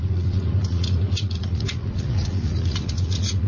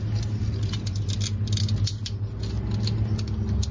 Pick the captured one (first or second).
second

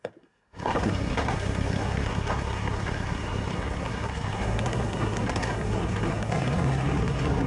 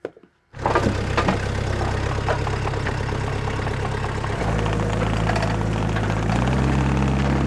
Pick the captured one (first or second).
second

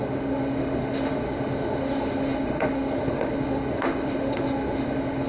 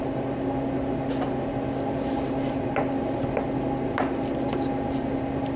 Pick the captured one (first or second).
second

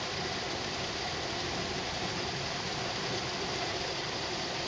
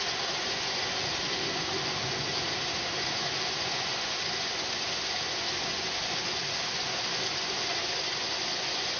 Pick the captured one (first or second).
first